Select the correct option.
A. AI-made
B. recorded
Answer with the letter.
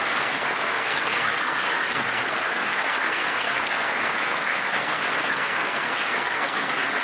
A